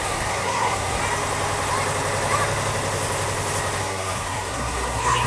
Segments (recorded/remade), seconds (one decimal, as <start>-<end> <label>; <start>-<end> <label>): 0.0-1.0 remade; 1.0-3.8 recorded; 3.8-5.3 remade